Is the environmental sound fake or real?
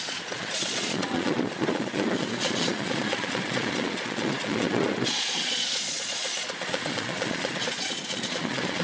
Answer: fake